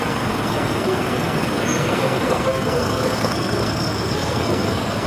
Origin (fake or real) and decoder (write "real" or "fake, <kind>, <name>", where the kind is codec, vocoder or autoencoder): fake, codec, SNAC